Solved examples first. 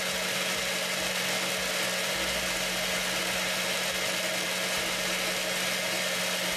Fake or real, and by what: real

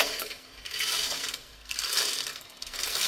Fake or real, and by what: fake, codec, SNAC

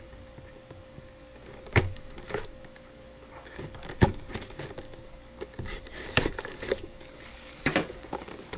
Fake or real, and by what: fake, codec, DAC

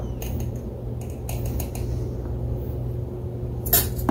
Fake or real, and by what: real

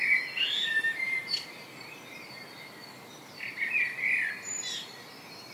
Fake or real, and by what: real